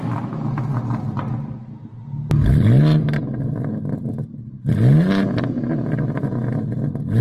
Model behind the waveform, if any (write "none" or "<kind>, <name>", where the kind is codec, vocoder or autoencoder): none